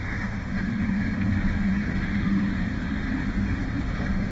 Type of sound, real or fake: fake